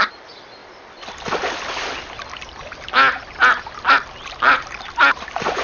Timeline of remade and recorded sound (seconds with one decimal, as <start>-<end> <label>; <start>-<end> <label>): 0.0-5.6 recorded